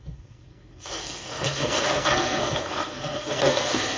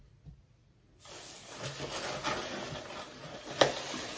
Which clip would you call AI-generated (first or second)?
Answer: first